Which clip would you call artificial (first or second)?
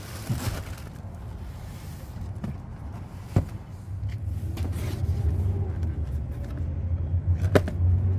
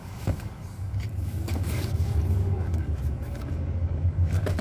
second